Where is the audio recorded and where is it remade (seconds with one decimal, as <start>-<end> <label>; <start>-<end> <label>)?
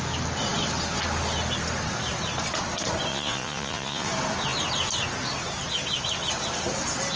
0.0-3.1 recorded; 3.1-4.1 remade; 4.1-7.2 recorded